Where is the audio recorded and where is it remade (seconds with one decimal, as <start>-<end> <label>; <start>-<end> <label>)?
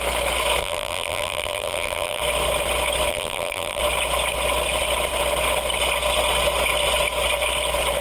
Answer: 0.0-0.6 recorded; 0.6-2.2 remade; 2.2-3.1 recorded; 3.1-3.8 remade; 3.8-8.0 recorded